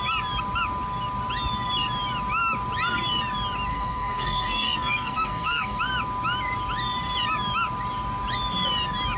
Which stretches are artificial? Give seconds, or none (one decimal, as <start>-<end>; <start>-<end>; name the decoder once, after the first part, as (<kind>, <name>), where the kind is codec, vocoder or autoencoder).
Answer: 3.7-5.8 (codec, SNAC)